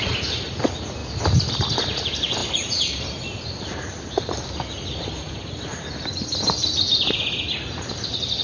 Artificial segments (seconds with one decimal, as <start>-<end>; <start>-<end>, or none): 2.4-3.0